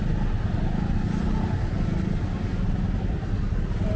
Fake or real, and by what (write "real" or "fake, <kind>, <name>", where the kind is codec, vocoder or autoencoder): real